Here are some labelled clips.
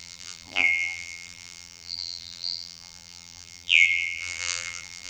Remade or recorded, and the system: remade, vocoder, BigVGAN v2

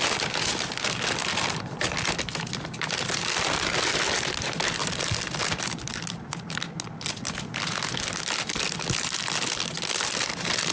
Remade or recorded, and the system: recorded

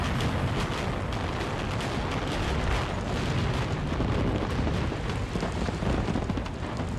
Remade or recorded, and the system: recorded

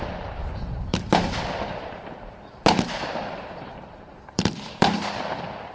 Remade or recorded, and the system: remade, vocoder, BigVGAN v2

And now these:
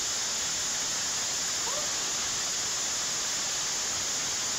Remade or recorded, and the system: recorded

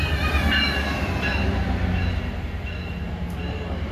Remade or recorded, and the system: recorded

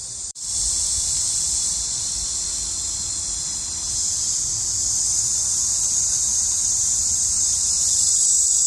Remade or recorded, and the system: remade, vocoder, BigVGAN v2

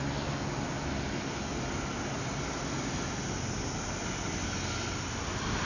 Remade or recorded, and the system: recorded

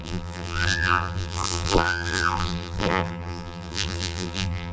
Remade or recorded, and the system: remade, vocoder, BigVGAN v2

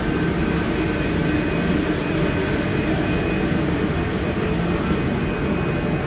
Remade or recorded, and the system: remade, vocoder, BigVGAN v2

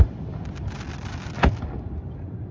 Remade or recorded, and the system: remade, vocoder, BigVGAN v2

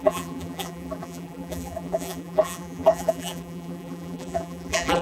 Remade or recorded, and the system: remade, vocoder, BigVGAN v2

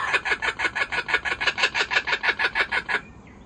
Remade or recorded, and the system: remade, vocoder, BigVGAN v2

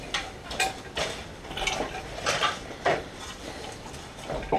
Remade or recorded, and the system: remade, vocoder, BigVGAN v2